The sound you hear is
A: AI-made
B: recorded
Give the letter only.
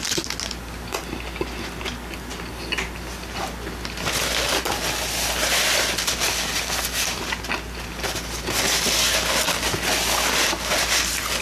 B